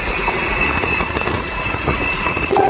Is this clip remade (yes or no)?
yes